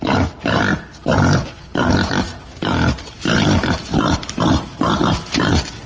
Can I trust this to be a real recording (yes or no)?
yes